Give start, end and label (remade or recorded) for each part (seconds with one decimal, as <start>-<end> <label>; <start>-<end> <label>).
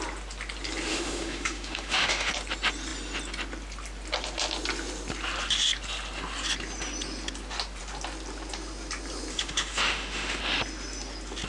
0.0-0.9 recorded; 0.9-2.3 remade; 2.3-9.3 recorded; 9.3-10.4 remade; 10.4-11.5 recorded